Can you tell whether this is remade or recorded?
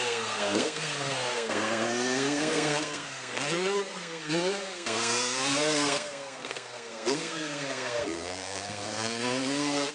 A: remade